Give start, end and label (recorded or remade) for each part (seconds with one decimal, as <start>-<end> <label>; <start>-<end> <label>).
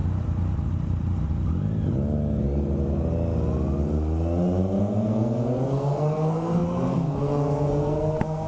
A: 0.0-4.8 recorded; 4.8-8.5 remade